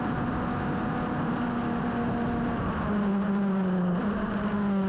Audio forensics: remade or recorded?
recorded